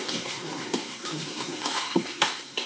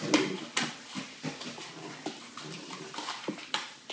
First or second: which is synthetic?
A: first